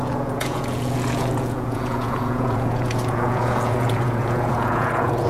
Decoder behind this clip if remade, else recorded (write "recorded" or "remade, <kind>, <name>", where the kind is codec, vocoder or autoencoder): remade, vocoder, Vocos